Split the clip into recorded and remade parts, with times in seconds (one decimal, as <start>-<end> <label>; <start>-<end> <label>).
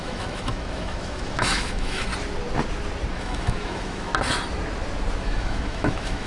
0.0-2.1 remade; 2.1-3.1 recorded; 3.1-4.1 remade; 4.1-5.2 recorded; 5.2-6.3 remade